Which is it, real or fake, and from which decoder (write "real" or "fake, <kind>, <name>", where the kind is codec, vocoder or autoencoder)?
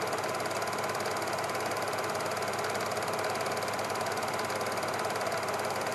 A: real